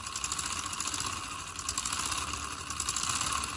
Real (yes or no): yes